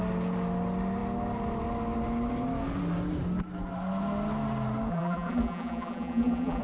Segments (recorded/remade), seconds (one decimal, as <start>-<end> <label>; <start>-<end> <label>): 0.0-4.9 recorded; 4.9-6.6 remade